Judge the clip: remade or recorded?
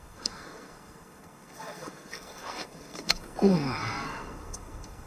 remade